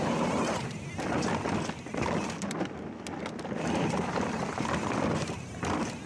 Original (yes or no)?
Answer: yes